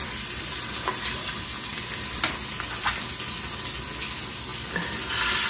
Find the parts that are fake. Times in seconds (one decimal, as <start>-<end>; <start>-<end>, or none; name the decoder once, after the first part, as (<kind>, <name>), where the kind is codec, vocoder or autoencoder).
none